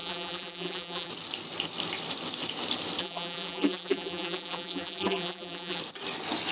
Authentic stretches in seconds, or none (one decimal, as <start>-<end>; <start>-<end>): 1.1-3.0; 5.8-6.5